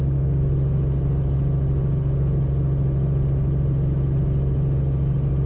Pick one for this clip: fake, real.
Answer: real